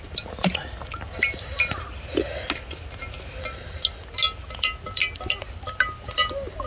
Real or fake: real